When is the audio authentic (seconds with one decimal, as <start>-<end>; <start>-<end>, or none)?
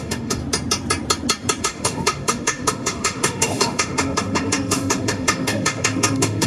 0.4-1.6